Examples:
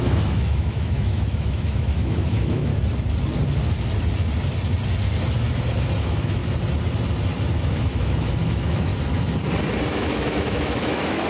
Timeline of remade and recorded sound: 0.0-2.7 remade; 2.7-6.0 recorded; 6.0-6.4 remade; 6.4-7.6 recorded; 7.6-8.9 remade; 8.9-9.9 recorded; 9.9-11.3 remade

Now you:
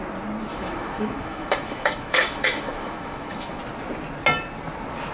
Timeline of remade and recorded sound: 0.0-0.5 recorded; 0.5-3.6 remade; 3.6-5.1 recorded

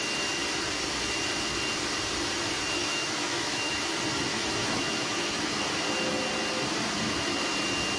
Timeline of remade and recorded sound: 0.0-2.8 recorded; 2.8-3.7 remade; 3.7-4.3 recorded; 4.3-5.5 remade; 5.5-8.0 recorded

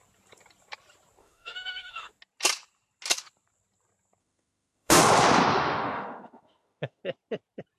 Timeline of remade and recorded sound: 0.0-1.2 recorded; 1.2-2.1 remade; 2.1-4.2 recorded; 4.2-5.0 remade; 5.0-5.5 recorded; 5.5-7.0 remade; 7.0-7.8 recorded

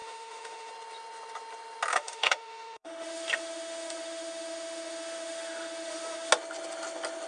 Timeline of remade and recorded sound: 0.0-0.7 remade; 0.7-1.9 recorded; 1.9-6.3 remade; 6.3-7.3 recorded

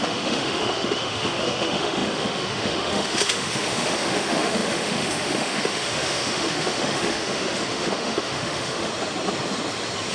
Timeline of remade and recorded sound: 0.0-8.9 remade; 8.9-10.1 recorded